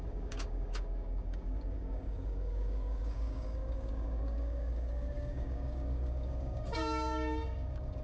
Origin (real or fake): fake